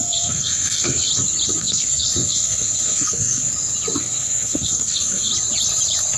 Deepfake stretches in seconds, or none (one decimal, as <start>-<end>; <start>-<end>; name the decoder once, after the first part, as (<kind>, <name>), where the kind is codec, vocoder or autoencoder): 0.0-1.1 (codec, SNAC); 1.6-3.5; 4.0-5.3